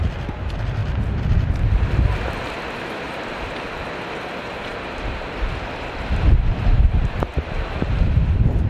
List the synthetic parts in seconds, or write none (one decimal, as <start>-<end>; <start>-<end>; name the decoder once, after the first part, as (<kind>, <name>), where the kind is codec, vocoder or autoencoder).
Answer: 4.7-5.5 (vocoder, BigVGAN v2); 7.3-8.7